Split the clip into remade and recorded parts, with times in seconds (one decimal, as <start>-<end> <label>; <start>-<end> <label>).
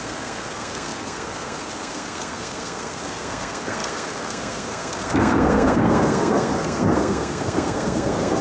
0.0-8.4 remade